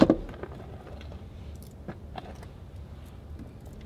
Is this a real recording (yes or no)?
yes